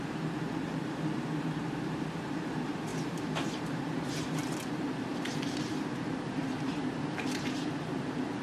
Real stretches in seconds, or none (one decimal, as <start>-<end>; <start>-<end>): none